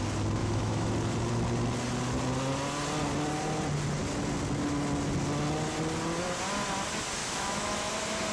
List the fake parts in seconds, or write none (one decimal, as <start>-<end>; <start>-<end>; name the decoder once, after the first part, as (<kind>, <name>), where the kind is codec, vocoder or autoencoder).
0.4-0.9 (autoencoder, DAC-VAE); 7.2-7.9